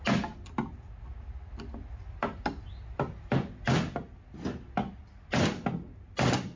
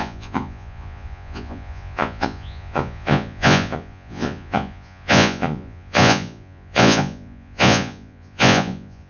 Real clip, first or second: first